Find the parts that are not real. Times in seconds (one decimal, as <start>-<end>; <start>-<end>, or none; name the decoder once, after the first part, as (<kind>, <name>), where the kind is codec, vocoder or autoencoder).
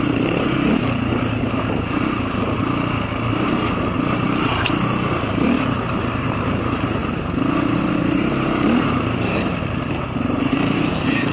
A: 0.0-7.0 (vocoder, BigVGAN v2); 7.8-11.3